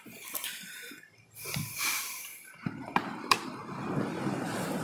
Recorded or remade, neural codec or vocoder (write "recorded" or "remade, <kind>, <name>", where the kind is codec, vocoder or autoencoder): remade, vocoder, BigVGAN v2